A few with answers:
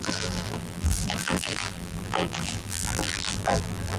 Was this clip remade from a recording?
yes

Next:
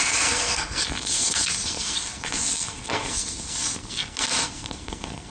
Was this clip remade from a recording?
yes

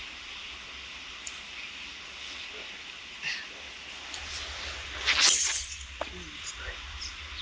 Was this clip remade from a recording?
no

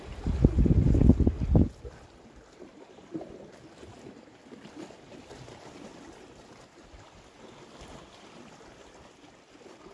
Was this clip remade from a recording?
no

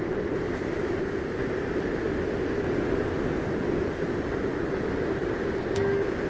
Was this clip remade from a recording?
no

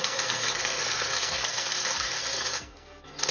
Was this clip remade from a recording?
yes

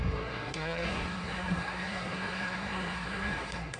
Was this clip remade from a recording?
yes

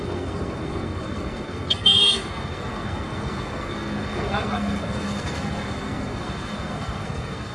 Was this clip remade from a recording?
yes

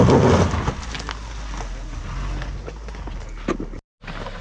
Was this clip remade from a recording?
no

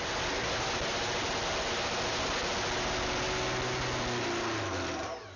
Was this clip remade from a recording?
no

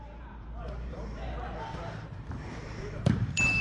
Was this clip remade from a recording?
yes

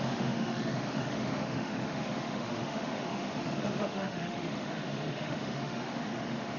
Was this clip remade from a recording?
yes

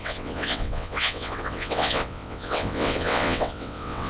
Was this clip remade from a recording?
yes